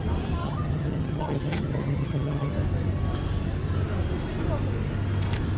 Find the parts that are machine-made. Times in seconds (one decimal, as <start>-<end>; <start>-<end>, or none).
0.4-2.5